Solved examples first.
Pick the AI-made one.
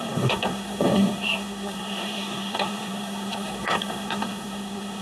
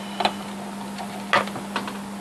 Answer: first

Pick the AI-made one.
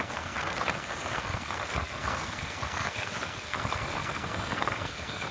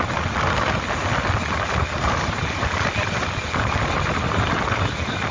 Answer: first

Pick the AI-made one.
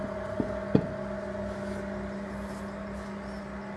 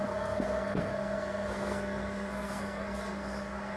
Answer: second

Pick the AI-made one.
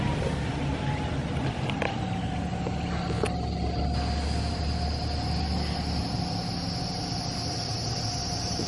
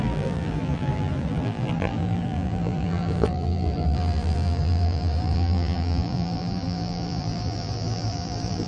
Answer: second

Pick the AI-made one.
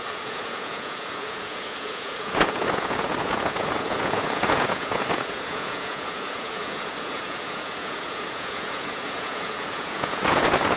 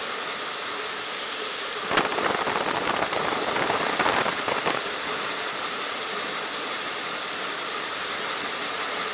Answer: first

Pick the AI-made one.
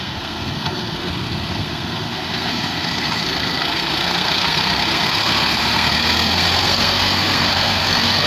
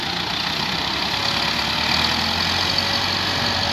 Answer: first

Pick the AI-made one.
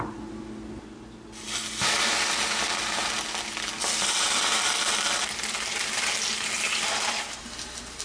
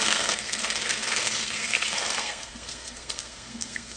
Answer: second